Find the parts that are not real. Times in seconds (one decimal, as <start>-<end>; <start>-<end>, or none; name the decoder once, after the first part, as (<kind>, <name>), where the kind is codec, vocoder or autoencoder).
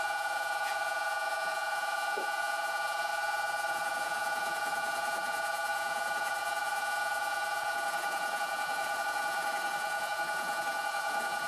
0.0-3.1 (vocoder, Vocos); 3.7-11.5